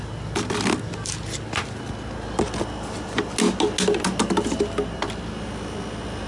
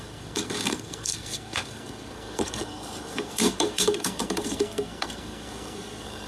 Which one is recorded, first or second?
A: first